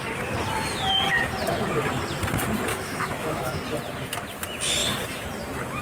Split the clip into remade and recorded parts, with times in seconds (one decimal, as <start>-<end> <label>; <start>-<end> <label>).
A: 0.0-2.7 recorded; 2.7-3.6 remade; 3.6-5.8 recorded

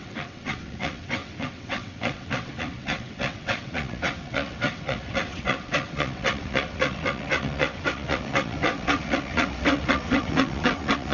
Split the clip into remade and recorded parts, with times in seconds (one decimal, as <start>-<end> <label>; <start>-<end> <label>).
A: 0.0-11.1 remade

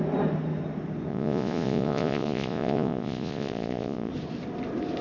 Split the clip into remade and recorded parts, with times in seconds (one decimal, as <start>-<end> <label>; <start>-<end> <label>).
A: 0.0-1.1 recorded; 1.1-4.1 remade; 4.1-5.0 recorded

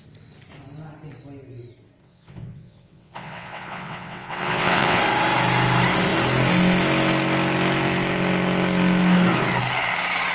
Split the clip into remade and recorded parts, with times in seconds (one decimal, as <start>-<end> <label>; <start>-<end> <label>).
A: 0.0-2.0 recorded; 2.0-5.0 remade; 5.0-10.3 recorded

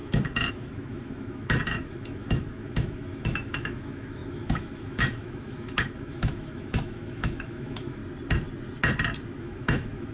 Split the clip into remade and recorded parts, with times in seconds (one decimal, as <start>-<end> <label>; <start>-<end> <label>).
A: 0.0-8.0 remade; 8.0-9.4 recorded; 9.4-10.1 remade